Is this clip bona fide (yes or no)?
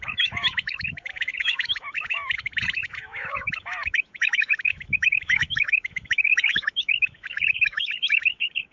no